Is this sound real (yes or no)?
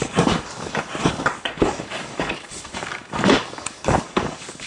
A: no